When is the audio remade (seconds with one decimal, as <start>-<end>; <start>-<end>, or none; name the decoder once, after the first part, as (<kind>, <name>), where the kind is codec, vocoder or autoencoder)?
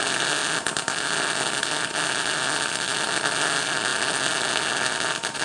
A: none